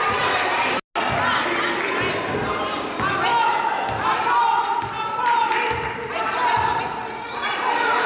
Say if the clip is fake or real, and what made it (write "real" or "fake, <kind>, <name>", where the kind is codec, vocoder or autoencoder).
real